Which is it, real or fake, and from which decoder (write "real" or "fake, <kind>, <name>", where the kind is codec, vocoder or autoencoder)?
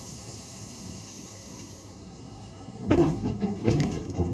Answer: fake, codec, SNAC